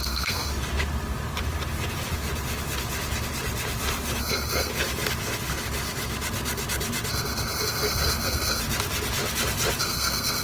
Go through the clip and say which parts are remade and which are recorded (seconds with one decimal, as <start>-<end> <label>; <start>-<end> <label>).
0.0-0.5 remade; 0.5-4.2 recorded; 4.2-4.7 remade; 4.7-7.1 recorded; 7.1-8.6 remade; 8.6-9.8 recorded; 9.8-10.4 remade